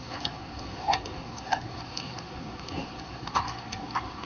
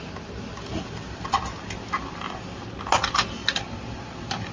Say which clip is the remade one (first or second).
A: first